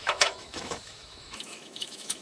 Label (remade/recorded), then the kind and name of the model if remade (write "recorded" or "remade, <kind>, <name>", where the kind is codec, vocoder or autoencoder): remade, autoencoder, DAC-VAE